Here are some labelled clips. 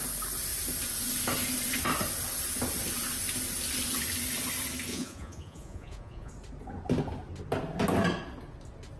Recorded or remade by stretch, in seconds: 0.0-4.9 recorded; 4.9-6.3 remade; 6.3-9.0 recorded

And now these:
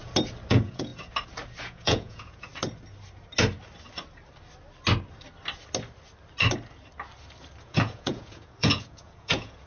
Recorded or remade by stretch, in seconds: 0.0-0.5 recorded; 0.5-0.9 remade; 0.9-1.6 recorded; 1.6-2.5 remade; 2.5-7.6 recorded; 7.6-9.7 remade

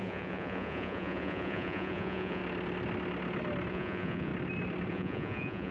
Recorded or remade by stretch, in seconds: 0.0-2.4 remade; 2.4-3.7 recorded; 3.7-4.3 remade; 4.3-4.9 recorded; 4.9-5.7 remade

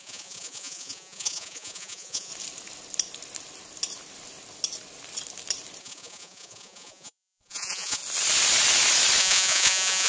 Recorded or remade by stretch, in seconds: 0.0-2.3 remade; 2.3-5.8 recorded; 5.8-8.0 remade; 8.0-9.2 recorded; 9.2-10.1 remade